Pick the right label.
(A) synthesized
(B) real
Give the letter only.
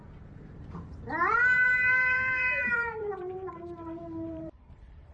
A